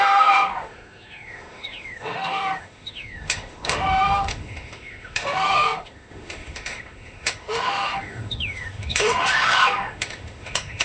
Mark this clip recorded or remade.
remade